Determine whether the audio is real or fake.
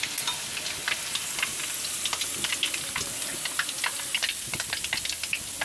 real